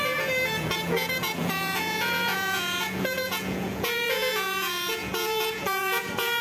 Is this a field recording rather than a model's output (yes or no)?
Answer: no